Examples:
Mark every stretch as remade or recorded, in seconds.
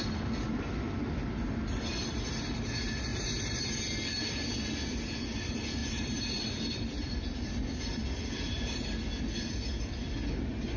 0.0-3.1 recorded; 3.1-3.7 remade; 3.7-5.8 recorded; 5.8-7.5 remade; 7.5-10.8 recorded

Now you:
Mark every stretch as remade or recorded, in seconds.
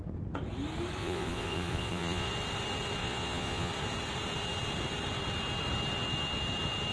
0.0-1.0 recorded; 1.0-2.3 remade; 2.3-3.0 recorded; 3.0-3.7 remade; 3.7-6.9 recorded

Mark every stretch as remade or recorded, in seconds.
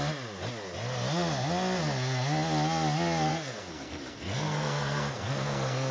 0.0-3.3 recorded; 3.3-5.9 remade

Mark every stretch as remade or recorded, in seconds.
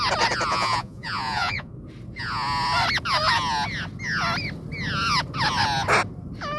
0.0-0.5 recorded; 0.5-1.7 remade; 1.7-6.6 recorded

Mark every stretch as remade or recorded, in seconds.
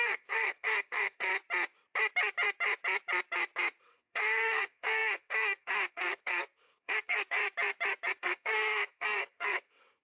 0.0-1.3 remade; 1.3-3.8 recorded; 3.8-7.4 remade; 7.4-8.1 recorded; 8.1-10.0 remade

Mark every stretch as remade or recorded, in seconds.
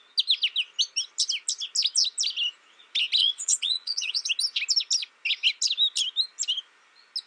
0.0-3.2 recorded; 3.2-4.3 remade; 4.3-7.3 recorded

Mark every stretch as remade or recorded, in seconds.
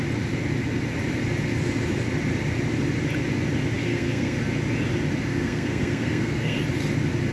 0.0-3.8 recorded; 3.8-4.4 remade; 4.4-5.3 recorded; 5.3-6.6 remade; 6.6-7.3 recorded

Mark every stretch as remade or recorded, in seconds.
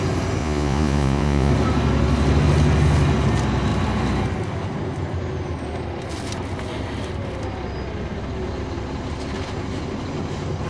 0.0-0.4 recorded; 0.4-1.5 remade; 1.5-10.7 recorded